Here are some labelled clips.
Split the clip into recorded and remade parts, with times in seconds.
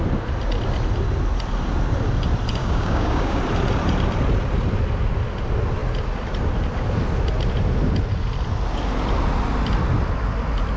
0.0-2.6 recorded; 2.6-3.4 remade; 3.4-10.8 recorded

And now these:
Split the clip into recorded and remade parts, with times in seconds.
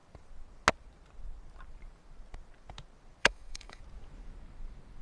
0.0-3.2 recorded; 3.2-3.8 remade; 3.8-5.0 recorded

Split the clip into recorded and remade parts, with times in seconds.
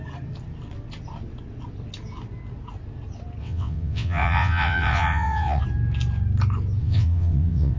0.0-3.4 recorded; 3.4-5.6 remade; 5.6-6.8 recorded; 6.8-7.8 remade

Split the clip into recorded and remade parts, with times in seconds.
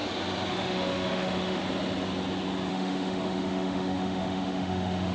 0.0-0.5 recorded; 0.5-1.6 remade; 1.6-2.7 recorded; 2.7-5.1 remade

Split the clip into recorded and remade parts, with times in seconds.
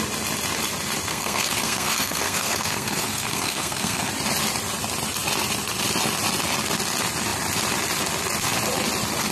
0.0-1.1 recorded; 1.1-4.1 remade; 4.1-9.3 recorded